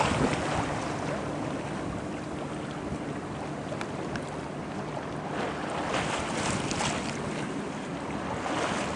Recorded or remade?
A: recorded